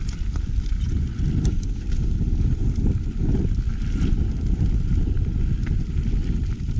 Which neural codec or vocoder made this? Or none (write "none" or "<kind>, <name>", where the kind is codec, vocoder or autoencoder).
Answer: none